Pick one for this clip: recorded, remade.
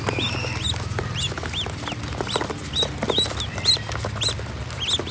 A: recorded